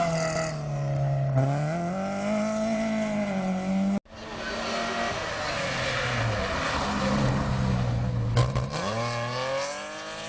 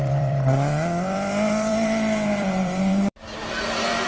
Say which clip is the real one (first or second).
first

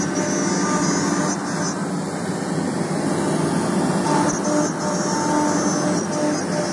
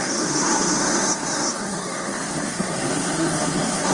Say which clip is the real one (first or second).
first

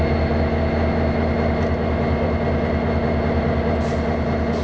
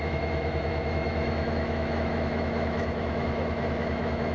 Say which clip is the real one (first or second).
first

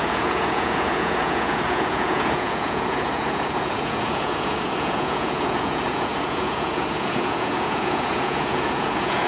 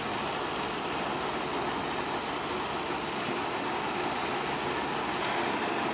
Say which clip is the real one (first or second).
second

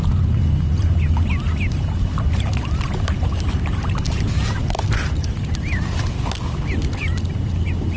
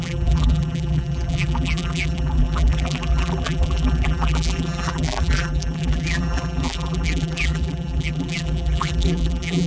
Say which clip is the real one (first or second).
first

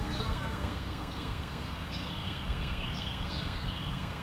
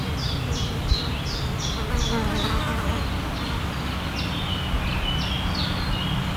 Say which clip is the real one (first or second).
second